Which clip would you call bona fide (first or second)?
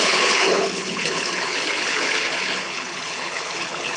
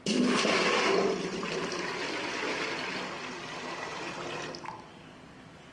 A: second